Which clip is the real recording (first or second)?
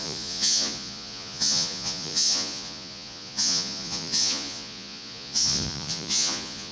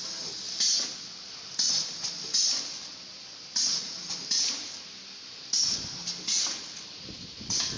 second